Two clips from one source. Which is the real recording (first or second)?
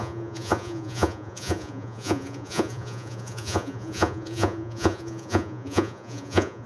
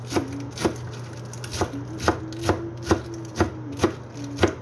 second